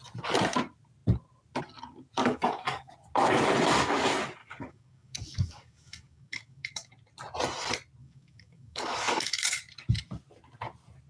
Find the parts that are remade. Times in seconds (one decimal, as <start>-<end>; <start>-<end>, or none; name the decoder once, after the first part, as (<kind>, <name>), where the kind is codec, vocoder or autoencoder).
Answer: 2.2-2.9 (codec, DAC); 4.4-6.9; 8.0-9.6